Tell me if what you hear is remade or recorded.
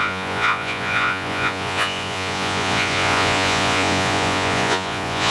remade